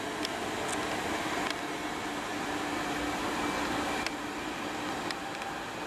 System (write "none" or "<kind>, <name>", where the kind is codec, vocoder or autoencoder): none